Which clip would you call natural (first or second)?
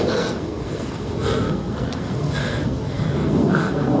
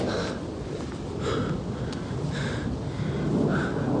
second